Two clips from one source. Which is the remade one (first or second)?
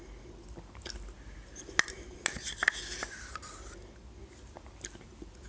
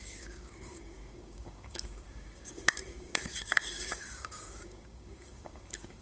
second